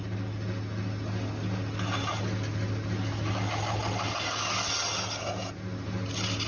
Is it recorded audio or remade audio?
recorded